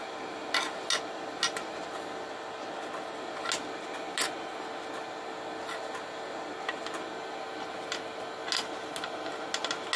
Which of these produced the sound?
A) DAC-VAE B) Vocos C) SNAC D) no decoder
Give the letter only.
D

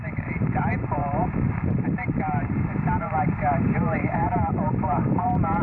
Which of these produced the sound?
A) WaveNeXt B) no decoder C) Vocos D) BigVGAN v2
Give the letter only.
D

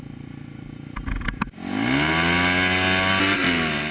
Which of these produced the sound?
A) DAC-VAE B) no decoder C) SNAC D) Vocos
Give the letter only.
B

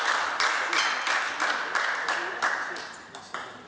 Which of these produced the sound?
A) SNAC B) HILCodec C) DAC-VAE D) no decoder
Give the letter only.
D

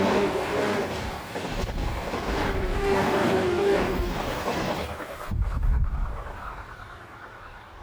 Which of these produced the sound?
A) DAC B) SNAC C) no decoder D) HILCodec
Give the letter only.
A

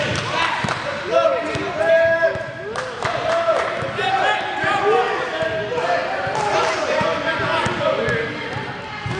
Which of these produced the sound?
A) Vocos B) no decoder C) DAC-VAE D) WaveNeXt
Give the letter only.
B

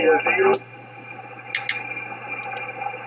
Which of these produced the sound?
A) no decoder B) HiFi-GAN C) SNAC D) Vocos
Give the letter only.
A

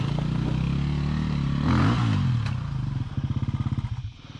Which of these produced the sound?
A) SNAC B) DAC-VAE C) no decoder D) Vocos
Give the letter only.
C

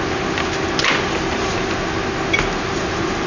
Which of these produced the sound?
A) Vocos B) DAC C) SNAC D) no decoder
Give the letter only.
D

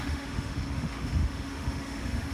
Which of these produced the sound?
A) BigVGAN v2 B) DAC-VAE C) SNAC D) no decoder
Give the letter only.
B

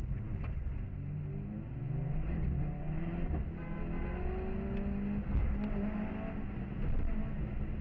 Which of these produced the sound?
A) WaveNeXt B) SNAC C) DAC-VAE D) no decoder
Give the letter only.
D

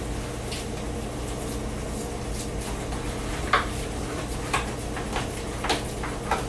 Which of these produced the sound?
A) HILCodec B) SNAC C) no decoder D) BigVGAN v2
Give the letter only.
C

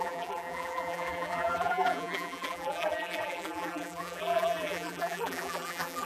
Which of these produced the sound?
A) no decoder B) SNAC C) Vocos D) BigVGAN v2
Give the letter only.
D